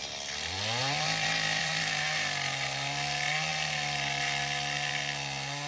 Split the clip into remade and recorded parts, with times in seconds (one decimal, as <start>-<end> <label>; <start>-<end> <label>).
0.0-0.8 recorded; 0.8-1.9 remade; 1.9-5.7 recorded